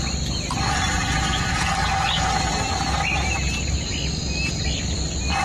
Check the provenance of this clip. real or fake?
real